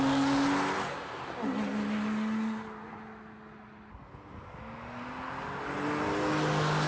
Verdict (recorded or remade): recorded